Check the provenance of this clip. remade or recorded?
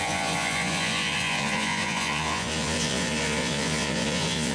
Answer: remade